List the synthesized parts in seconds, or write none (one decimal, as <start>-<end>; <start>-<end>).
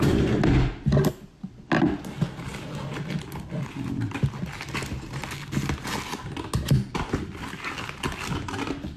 none